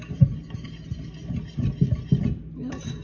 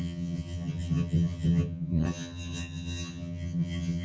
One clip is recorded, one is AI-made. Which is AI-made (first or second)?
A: second